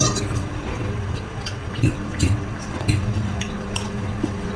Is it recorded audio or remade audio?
remade